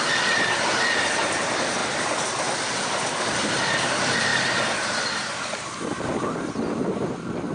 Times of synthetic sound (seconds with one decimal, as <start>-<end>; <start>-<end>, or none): none